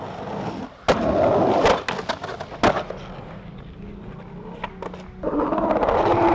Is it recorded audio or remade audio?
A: recorded